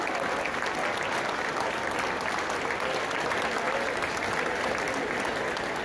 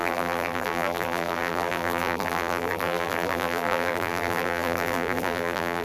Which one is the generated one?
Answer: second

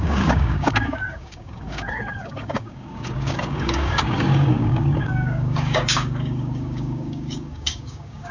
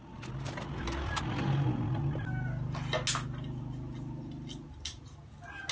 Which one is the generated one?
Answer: first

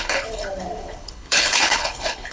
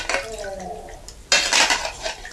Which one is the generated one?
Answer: first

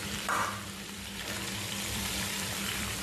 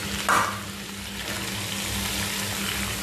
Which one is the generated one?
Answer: first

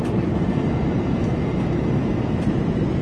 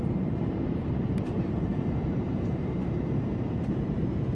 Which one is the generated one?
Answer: second